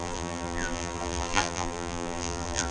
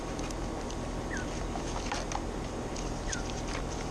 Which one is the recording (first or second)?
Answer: second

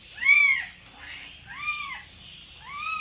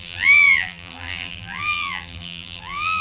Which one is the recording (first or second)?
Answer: first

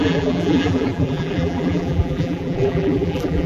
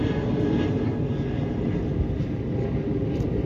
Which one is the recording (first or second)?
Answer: second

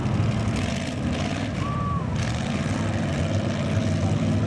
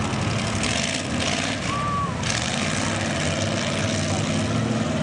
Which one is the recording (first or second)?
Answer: second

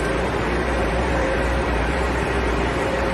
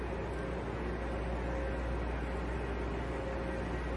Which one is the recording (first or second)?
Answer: second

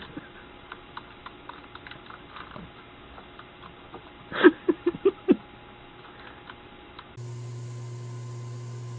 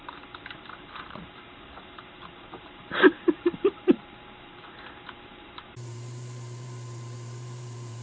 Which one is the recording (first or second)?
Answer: first